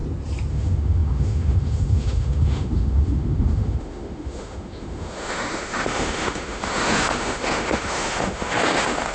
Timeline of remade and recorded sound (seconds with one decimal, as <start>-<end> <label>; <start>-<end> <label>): 0.0-0.5 recorded; 0.5-9.1 remade